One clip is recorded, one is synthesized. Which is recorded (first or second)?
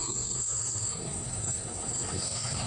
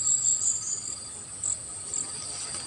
second